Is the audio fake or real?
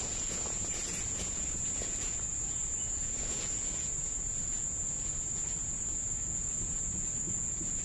fake